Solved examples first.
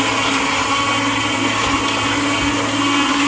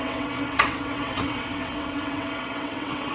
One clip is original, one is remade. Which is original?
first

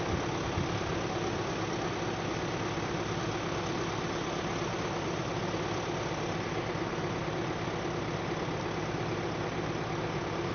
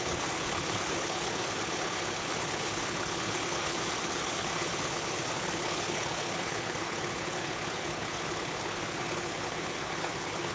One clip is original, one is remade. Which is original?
first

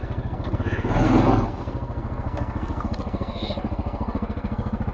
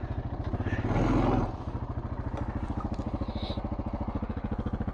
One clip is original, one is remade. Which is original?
second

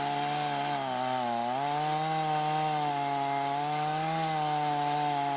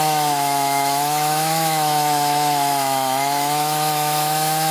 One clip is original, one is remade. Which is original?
first